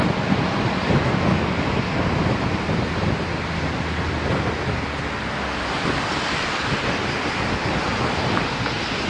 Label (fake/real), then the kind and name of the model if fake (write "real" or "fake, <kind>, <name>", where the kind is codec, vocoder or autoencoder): real